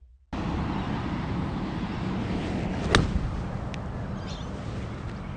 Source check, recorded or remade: recorded